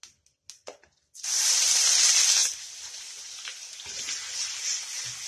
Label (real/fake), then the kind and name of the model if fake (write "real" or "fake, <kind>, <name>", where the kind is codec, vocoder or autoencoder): real